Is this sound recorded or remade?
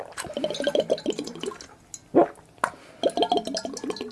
recorded